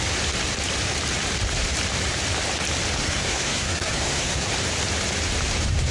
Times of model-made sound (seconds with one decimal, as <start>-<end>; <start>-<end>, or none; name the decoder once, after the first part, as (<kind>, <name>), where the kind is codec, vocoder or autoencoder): 3.0-4.5 (codec, SNAC)